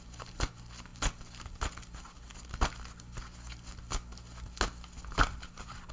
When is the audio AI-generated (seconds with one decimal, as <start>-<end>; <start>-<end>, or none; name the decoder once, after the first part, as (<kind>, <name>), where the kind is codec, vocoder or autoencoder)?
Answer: none